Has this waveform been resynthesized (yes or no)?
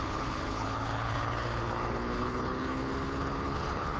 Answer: yes